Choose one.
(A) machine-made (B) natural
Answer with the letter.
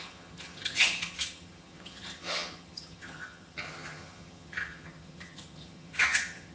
A